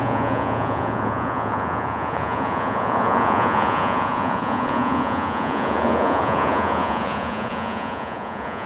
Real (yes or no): no